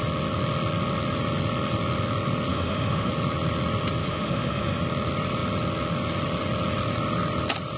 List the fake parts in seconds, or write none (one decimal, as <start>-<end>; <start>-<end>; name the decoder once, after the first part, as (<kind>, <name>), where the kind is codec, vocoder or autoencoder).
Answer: 2.5-3.1 (autoencoder, DAC-VAE); 4.0-4.8